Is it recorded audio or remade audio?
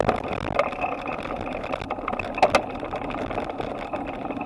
recorded